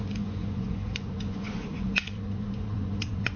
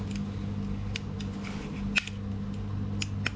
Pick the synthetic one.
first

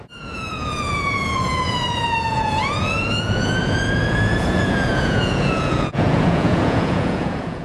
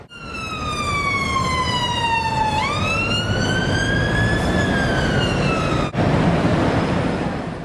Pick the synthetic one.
first